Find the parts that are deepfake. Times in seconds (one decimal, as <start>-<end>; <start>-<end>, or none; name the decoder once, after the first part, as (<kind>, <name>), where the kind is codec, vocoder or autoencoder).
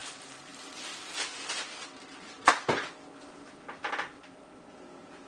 none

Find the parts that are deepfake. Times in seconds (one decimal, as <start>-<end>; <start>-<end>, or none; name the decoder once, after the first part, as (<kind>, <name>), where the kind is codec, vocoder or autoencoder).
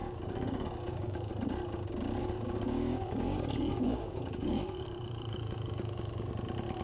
0.0-1.3 (codec, DAC); 2.2-6.3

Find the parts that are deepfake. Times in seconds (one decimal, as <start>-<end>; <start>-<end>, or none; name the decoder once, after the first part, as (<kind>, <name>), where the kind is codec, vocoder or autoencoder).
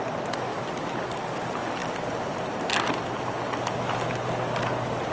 none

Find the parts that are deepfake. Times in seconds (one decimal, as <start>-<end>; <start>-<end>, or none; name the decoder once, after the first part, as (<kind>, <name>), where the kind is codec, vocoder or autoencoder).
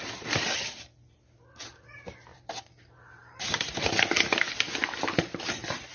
0.0-1.2 (vocoder, BigVGAN v2); 2.3-5.9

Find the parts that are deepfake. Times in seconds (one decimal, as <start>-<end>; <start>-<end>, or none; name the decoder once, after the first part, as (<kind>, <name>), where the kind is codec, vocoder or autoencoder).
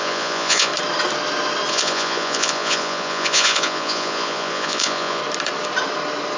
0.0-0.7 (vocoder, Vocos); 1.7-5.2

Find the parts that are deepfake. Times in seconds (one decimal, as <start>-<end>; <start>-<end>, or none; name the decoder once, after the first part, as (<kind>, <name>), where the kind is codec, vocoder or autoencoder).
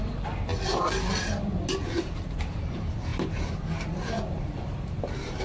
none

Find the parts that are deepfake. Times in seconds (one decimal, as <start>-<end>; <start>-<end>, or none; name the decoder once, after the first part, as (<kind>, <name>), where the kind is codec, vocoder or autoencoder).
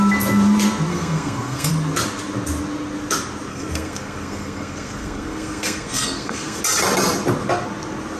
0.9-1.7 (codec, SNAC); 3.5-6.6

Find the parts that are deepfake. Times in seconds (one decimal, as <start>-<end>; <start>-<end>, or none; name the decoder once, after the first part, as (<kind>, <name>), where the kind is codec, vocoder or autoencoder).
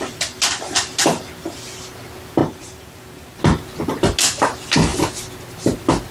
2.4-3.4 (vocoder, BigVGAN v2)